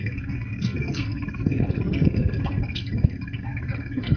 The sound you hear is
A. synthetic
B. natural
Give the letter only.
A